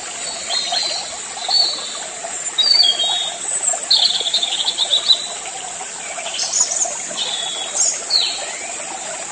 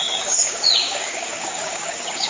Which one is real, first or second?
first